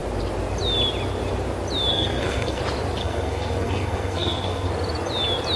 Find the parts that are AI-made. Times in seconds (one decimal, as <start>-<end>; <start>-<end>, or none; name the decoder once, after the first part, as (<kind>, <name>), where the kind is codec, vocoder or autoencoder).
1.9-2.6 (codec, SNAC); 3.0-4.7